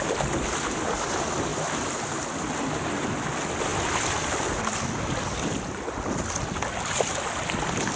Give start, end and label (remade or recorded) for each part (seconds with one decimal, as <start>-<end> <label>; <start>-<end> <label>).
0.0-8.0 recorded